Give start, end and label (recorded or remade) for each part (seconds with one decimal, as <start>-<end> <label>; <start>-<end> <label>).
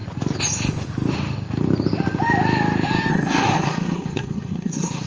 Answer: 0.0-3.1 recorded; 3.1-5.1 remade